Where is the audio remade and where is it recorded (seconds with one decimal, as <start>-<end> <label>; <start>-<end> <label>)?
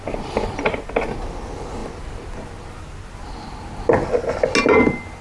0.0-5.2 recorded